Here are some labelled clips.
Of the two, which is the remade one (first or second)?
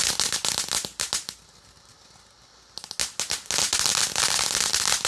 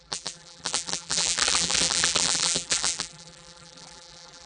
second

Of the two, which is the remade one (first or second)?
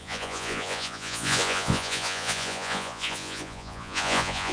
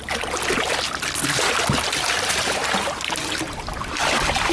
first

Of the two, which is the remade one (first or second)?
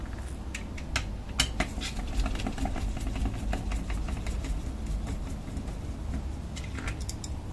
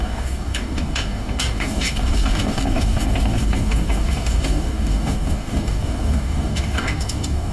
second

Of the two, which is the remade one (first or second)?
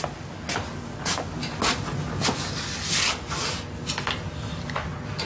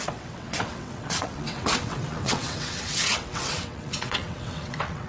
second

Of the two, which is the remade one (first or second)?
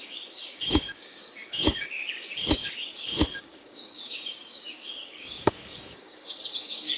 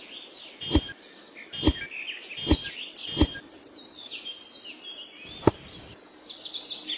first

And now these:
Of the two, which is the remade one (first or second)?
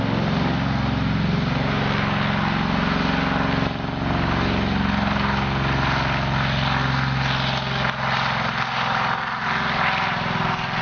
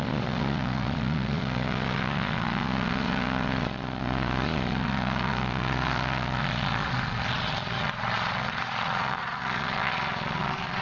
second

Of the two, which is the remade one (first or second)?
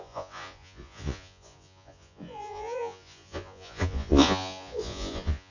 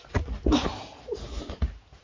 first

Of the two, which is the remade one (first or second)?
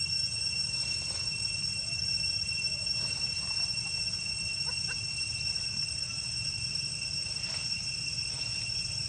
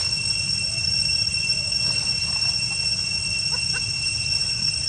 first